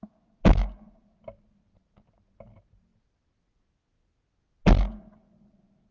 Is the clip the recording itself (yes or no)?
yes